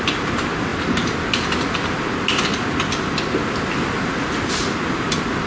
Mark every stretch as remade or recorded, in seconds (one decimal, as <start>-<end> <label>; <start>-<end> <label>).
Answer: 0.0-5.5 recorded